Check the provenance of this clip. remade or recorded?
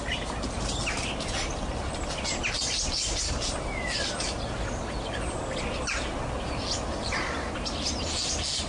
recorded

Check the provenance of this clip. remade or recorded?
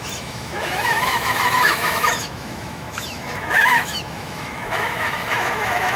remade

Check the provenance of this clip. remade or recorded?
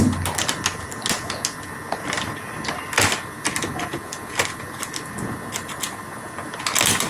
recorded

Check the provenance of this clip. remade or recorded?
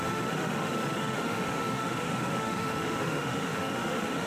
remade